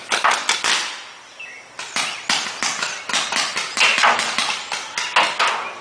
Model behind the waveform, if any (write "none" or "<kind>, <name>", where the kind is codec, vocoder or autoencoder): none